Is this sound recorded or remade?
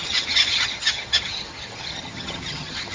remade